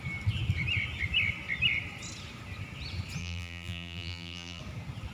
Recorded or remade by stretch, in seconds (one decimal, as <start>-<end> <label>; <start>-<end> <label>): 0.0-3.2 recorded; 3.2-4.6 remade; 4.6-5.1 recorded

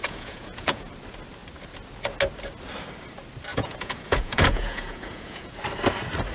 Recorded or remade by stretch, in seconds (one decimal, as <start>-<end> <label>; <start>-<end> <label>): 0.0-0.9 remade; 0.9-3.5 recorded; 3.5-5.5 remade; 5.5-6.3 recorded

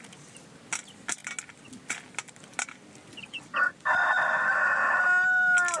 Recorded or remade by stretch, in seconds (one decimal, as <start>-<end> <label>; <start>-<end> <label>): 0.0-5.8 recorded

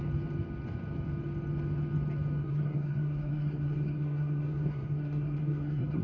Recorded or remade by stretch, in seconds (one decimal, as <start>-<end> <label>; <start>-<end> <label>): 0.0-2.4 recorded; 2.4-6.0 remade

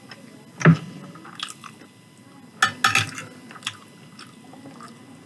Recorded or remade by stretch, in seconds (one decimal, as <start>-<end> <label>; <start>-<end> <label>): 0.0-5.3 recorded

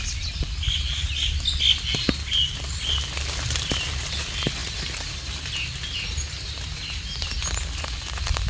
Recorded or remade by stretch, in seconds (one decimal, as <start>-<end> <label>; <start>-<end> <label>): 0.0-8.5 recorded

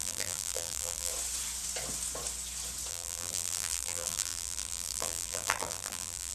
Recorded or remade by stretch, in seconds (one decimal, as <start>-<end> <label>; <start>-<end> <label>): 0.0-1.1 remade; 1.1-2.9 recorded; 2.9-6.3 remade